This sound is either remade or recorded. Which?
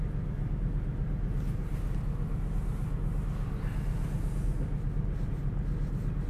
recorded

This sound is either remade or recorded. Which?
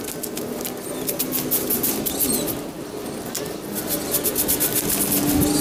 recorded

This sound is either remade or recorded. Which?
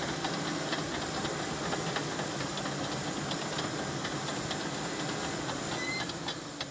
recorded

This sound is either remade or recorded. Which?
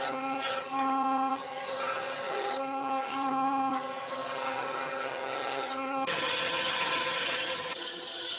remade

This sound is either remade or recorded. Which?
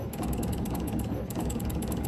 remade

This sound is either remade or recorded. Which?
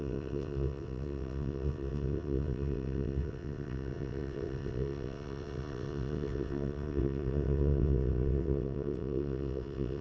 remade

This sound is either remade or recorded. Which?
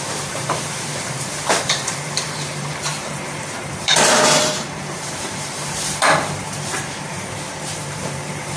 remade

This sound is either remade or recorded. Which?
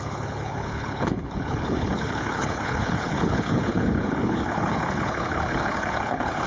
remade